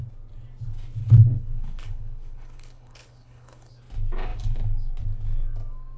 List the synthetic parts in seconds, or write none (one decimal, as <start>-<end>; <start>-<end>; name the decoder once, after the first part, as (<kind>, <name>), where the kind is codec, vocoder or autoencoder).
1.0-3.7 (codec, HILCodec)